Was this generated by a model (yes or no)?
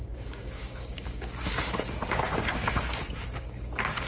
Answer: yes